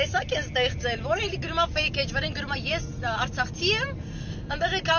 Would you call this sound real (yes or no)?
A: yes